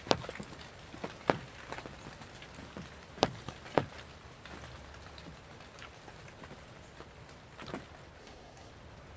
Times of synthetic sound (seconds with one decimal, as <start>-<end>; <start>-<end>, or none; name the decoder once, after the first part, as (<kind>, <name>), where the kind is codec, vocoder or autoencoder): 8.2-8.7 (codec, SNAC)